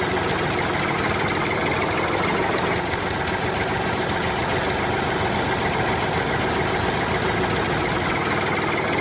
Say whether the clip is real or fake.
real